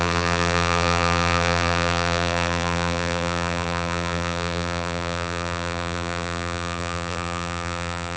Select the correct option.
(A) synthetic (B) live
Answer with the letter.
A